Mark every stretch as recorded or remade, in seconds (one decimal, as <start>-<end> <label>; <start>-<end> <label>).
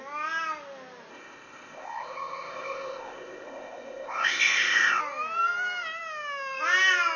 0.0-1.1 recorded; 1.1-5.0 remade; 5.0-7.2 recorded